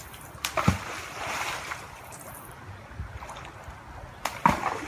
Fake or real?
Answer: real